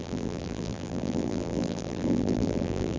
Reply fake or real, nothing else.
fake